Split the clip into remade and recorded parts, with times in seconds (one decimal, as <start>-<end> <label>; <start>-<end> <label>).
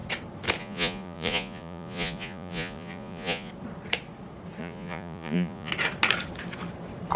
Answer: 0.0-0.6 recorded; 0.6-3.5 remade; 3.5-4.6 recorded; 4.6-5.7 remade; 5.7-7.2 recorded